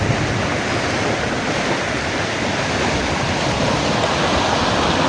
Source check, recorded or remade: recorded